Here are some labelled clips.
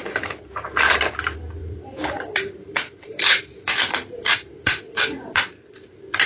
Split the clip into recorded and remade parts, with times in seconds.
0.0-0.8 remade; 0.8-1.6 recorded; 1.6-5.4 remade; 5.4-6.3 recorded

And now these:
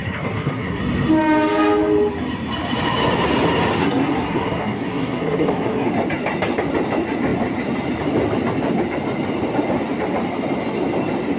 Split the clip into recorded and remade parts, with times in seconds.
0.0-0.8 remade; 0.8-3.8 recorded; 3.8-5.9 remade; 5.9-11.4 recorded